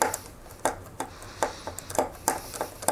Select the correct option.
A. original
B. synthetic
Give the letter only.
A